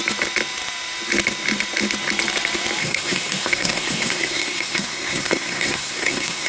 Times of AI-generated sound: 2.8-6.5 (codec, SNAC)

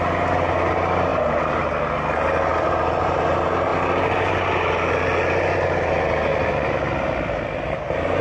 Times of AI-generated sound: 1.1-1.6 (vocoder, BigVGAN v2); 2.5-3.2

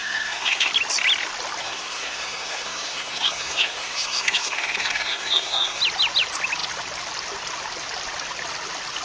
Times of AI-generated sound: 0.0-0.7 (codec, SNAC); 1.6-5.8

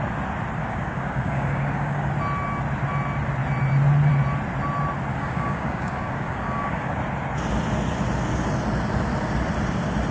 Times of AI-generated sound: 0.6-2.1 (codec, DAC); 5.1-7.0

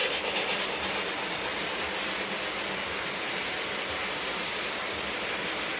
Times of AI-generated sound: none

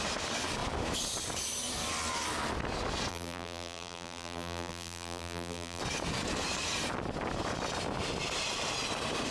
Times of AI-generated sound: 3.1-5.8 (vocoder, BigVGAN v2)